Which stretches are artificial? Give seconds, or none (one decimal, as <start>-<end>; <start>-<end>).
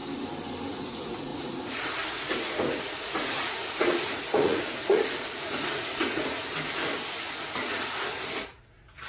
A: 0.7-6.4; 7.6-9.1